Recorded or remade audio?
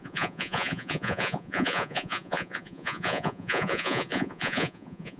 remade